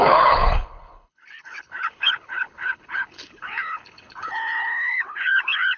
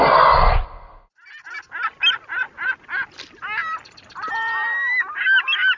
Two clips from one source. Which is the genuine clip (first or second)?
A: second